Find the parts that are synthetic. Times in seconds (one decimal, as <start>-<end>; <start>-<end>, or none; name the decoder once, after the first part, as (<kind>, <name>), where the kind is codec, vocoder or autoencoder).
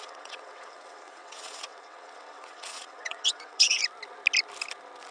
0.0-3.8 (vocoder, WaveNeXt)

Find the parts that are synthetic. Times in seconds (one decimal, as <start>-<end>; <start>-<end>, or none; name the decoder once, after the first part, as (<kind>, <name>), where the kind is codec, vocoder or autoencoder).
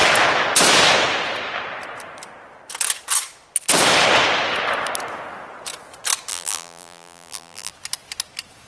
6.3-7.7 (vocoder, BigVGAN v2)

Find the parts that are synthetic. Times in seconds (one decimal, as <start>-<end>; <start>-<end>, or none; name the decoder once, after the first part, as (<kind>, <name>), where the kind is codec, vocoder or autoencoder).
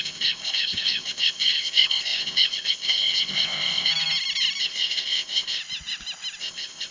0.0-3.9 (codec, ZipCodec); 4.6-5.6; 6.4-6.9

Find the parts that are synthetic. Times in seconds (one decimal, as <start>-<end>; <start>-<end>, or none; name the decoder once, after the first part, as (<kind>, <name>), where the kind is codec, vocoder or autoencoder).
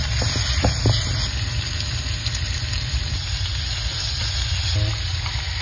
none